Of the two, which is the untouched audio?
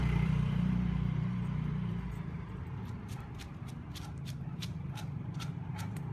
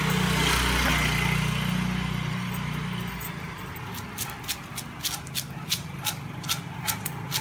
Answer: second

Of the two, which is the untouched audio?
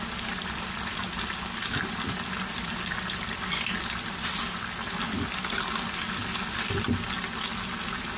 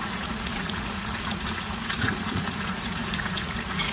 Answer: first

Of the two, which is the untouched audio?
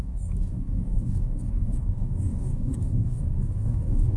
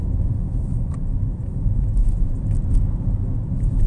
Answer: second